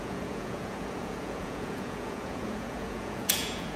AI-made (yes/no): yes